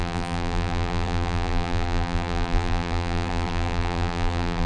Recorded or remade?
remade